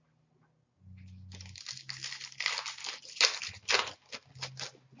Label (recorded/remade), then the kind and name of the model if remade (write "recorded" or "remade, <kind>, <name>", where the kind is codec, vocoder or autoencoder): recorded